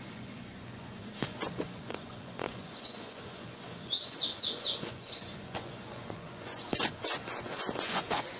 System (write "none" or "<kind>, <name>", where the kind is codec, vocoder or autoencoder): vocoder, Vocos